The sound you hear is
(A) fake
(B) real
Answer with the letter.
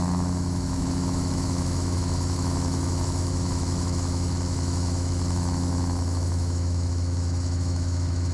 A